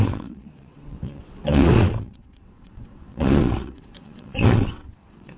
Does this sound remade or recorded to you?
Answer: remade